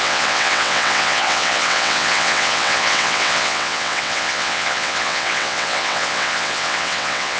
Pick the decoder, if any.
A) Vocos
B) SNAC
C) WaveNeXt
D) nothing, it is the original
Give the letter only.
C